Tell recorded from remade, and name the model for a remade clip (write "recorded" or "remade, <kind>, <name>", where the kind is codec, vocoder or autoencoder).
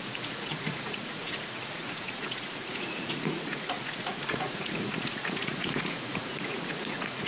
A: remade, vocoder, Vocos